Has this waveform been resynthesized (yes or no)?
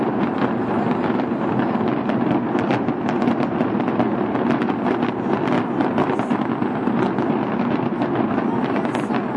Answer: no